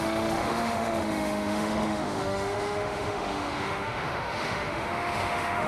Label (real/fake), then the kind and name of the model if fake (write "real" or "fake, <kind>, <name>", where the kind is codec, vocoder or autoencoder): fake, autoencoder, DAC-VAE